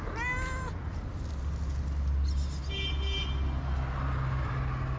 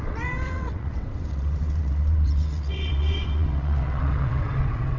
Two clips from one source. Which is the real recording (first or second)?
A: first